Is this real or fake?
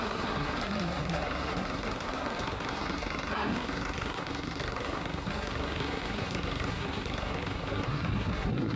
fake